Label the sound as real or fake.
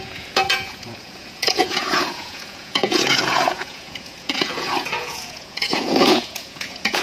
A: fake